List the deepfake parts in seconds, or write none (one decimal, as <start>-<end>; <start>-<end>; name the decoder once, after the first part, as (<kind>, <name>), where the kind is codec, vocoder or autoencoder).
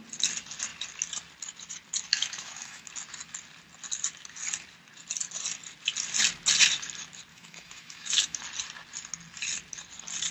2.1-2.9 (autoencoder, DAC-VAE); 7.3-8.4